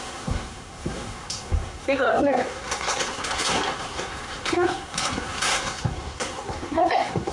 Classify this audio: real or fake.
fake